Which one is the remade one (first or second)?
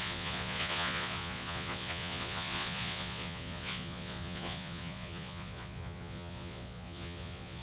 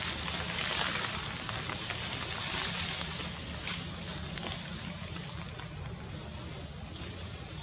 first